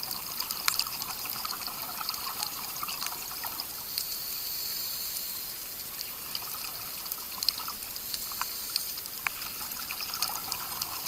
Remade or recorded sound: recorded